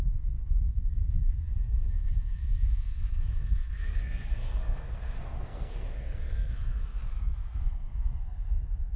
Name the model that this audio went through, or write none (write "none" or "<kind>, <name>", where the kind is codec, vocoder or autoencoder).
codec, SNAC